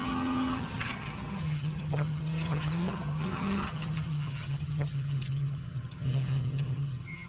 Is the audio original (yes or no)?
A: no